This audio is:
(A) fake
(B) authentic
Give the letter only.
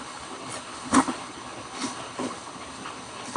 A